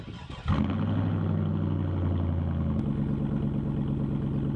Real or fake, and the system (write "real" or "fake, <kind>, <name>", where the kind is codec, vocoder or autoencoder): real